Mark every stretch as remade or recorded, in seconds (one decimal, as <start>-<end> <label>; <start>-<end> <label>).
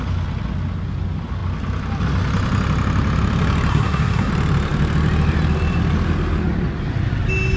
0.0-3.7 recorded; 3.7-4.3 remade; 4.3-7.6 recorded